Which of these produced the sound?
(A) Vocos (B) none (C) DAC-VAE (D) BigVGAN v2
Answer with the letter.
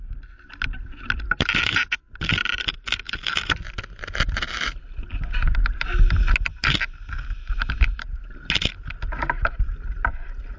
B